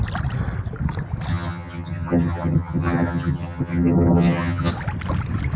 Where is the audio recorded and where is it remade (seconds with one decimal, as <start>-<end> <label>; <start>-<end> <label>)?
0.0-1.3 recorded; 1.3-4.7 remade; 4.7-5.6 recorded